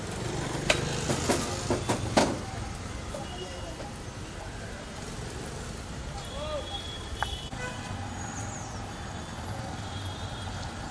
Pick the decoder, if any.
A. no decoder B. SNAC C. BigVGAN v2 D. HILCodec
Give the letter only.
A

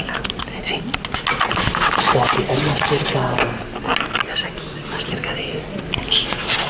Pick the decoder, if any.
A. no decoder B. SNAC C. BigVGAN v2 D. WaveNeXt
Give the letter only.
A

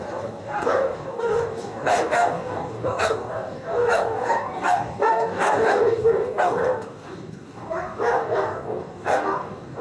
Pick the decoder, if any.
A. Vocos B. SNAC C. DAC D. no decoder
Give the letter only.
C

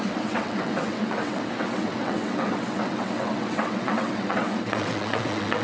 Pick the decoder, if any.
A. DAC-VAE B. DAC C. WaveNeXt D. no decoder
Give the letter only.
C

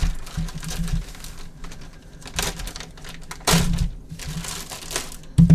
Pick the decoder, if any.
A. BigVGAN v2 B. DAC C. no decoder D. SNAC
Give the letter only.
C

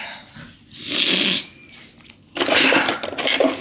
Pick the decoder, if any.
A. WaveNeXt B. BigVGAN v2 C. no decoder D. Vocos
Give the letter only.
C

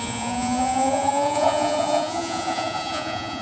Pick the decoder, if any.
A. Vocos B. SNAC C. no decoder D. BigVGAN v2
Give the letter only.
A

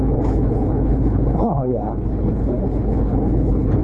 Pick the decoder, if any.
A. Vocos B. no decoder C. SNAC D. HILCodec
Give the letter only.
D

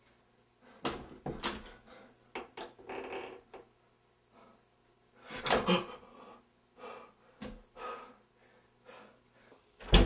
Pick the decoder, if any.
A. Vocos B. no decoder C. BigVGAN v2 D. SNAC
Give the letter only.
B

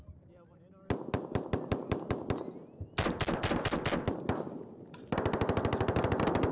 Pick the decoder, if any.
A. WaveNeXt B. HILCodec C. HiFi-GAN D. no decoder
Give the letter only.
D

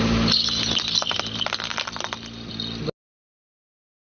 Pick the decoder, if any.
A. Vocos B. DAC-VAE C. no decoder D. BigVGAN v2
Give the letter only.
C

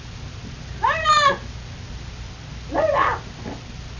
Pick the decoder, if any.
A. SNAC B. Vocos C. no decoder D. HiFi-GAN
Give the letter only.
C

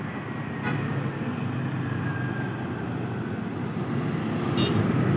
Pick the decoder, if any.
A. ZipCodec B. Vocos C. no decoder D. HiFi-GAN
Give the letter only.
C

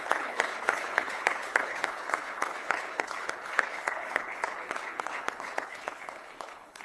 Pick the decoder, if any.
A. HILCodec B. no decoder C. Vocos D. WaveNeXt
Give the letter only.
A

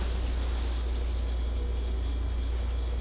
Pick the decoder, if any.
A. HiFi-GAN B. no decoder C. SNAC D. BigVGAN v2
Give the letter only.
B